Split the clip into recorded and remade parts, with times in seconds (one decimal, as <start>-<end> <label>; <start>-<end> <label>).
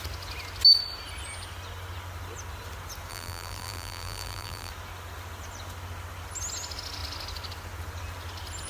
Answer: 0.0-3.1 recorded; 3.1-4.7 remade; 4.7-8.7 recorded